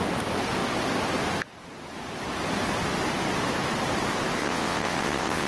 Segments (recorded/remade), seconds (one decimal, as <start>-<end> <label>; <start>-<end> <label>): 0.0-4.4 recorded; 4.4-5.5 remade